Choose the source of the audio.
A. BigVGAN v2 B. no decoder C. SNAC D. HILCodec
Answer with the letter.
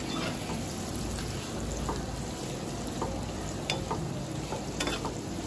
B